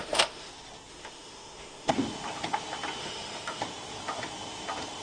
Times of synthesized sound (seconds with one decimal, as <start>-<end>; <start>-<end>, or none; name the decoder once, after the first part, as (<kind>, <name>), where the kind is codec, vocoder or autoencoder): 0.0-0.5 (autoencoder, DAC-VAE); 0.9-1.9; 3.0-3.6